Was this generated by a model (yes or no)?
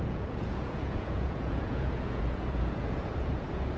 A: yes